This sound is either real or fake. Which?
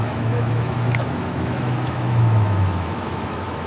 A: fake